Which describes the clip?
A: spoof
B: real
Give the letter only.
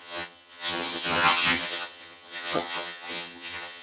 A